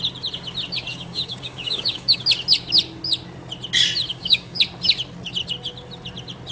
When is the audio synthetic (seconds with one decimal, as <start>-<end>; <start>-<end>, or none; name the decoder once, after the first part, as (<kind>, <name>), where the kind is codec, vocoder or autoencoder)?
0.9-2.2 (codec, DAC); 4.1-4.6